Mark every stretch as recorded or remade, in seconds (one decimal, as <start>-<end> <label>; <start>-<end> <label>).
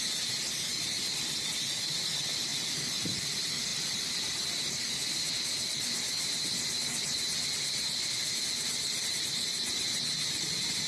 0.0-10.9 recorded